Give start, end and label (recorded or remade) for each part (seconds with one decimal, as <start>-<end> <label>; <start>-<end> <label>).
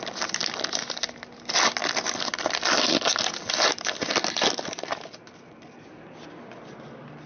0.0-7.3 recorded